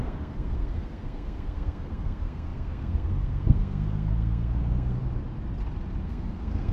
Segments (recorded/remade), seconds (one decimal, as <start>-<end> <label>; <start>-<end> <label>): 0.0-5.0 remade; 5.0-6.0 recorded; 6.0-6.7 remade